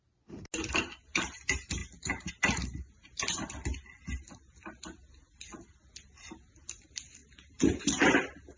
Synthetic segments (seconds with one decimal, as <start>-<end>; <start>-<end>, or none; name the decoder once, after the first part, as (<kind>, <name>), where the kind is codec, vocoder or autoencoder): 7.2-8.1 (vocoder, BigVGAN v2)